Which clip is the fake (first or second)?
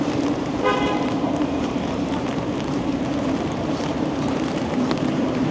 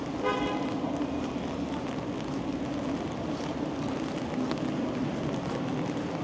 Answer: first